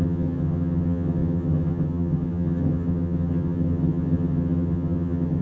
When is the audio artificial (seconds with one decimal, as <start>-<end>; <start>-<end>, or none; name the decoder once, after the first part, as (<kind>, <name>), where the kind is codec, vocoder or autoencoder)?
0.0-5.4 (vocoder, HiFi-GAN)